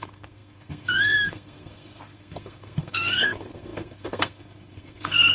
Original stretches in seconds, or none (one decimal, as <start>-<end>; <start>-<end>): none